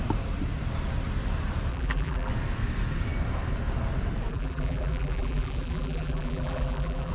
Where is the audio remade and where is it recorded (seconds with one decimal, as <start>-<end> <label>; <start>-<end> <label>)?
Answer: 0.0-1.7 recorded; 1.7-2.3 remade; 2.3-4.3 recorded; 4.3-7.1 remade